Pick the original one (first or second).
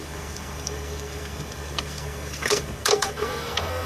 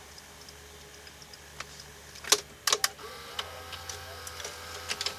second